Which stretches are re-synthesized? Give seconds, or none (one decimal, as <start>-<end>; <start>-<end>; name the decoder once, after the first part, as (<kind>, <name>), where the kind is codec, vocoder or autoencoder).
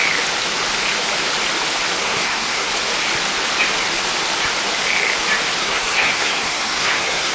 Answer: 2.0-2.7 (codec, SNAC); 5.6-7.3